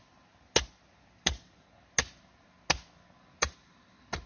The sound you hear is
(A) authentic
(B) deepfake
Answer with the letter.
A